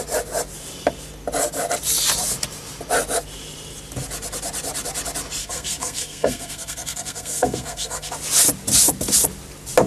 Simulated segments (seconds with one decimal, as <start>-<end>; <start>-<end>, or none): 5.4-8.1